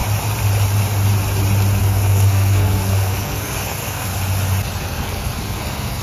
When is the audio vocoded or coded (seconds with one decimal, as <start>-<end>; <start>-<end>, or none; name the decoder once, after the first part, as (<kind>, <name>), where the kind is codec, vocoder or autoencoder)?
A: 1.8-4.1 (codec, SNAC); 4.8-6.0